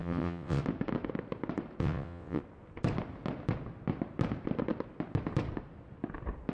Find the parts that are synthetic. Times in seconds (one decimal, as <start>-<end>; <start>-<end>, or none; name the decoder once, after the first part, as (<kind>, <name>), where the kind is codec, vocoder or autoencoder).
0.0-0.6 (vocoder, WaveNeXt); 1.8-2.4